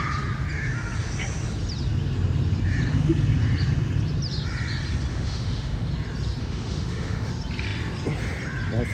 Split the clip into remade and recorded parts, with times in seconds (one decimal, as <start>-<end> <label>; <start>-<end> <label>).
0.0-5.1 recorded; 5.1-5.9 remade; 5.9-6.4 recorded; 6.4-7.3 remade; 7.3-8.9 recorded

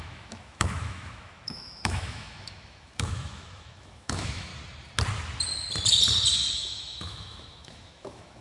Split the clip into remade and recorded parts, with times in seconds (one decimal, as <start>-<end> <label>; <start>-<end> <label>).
0.0-4.5 remade; 4.5-6.5 recorded; 6.5-8.4 remade

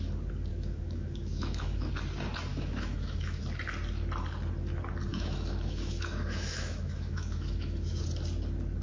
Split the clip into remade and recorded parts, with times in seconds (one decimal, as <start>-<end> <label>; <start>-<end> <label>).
0.0-0.5 recorded; 0.5-1.9 remade; 1.9-2.5 recorded; 2.5-3.4 remade; 3.4-5.1 recorded; 5.1-8.0 remade; 8.0-8.8 recorded

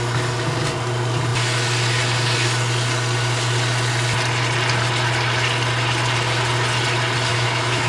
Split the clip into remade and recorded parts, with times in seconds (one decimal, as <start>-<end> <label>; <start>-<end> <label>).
0.0-7.3 recorded; 7.3-7.9 remade

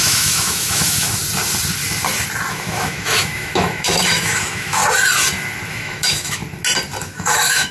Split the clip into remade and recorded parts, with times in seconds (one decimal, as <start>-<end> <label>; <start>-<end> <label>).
0.0-1.2 remade; 1.2-2.5 recorded; 2.5-4.8 remade; 4.8-5.7 recorded; 5.7-6.4 remade; 6.4-7.0 recorded; 7.0-7.7 remade